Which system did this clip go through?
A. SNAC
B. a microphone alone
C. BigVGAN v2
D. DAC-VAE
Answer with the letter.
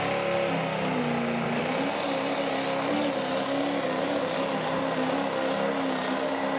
B